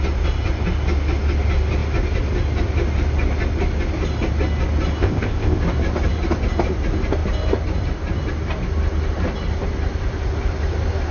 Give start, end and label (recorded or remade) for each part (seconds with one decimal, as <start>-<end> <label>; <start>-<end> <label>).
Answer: 0.0-5.0 recorded; 5.0-5.6 remade; 5.6-11.1 recorded

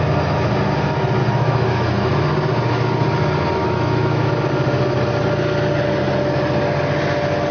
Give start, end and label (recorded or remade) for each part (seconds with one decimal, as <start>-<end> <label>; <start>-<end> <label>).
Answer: 0.0-1.2 recorded; 1.2-2.2 remade; 2.2-3.6 recorded; 3.6-4.3 remade; 4.3-7.5 recorded

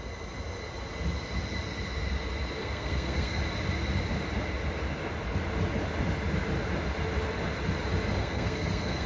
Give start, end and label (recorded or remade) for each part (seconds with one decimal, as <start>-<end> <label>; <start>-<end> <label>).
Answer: 0.0-2.6 recorded; 2.6-3.4 remade; 3.4-8.2 recorded; 8.2-9.1 remade